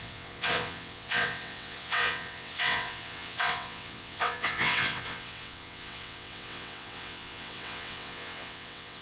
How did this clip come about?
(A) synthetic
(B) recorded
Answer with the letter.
A